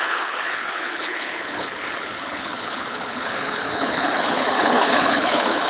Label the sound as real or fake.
fake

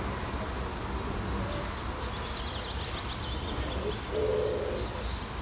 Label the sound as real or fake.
real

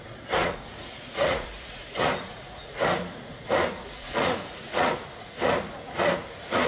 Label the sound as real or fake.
fake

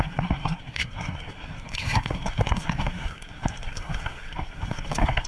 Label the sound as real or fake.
fake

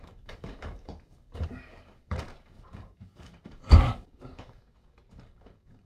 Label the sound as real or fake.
fake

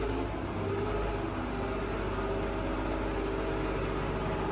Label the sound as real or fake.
real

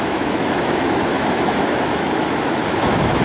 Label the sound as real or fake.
fake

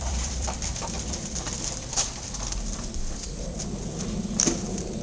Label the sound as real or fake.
fake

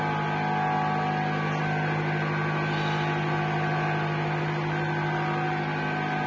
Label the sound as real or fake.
real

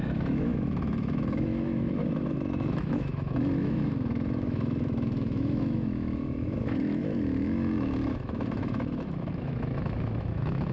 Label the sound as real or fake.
fake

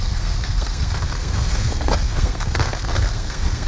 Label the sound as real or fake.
fake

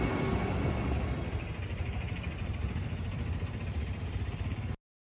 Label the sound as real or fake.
real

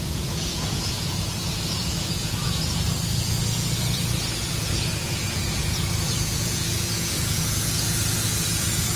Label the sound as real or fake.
fake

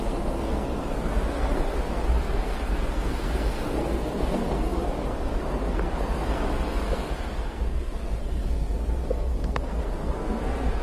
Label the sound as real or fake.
fake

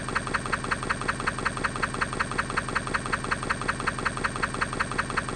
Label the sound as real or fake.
fake